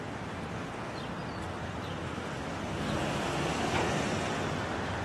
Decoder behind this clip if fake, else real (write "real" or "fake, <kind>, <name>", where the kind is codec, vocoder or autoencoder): real